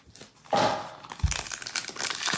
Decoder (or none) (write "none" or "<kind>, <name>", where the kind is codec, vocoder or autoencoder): none